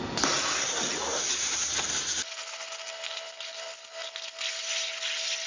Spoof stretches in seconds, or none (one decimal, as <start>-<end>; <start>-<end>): 1.1-1.7